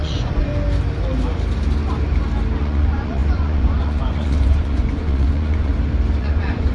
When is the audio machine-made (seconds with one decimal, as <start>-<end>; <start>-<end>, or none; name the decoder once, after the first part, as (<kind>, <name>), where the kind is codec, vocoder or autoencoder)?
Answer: 0.0-0.5 (vocoder, Vocos); 2.6-5.7; 6.2-6.7